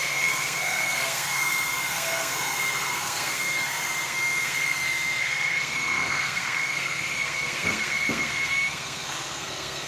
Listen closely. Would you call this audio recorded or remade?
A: remade